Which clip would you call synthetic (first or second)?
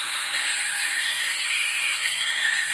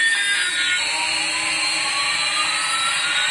first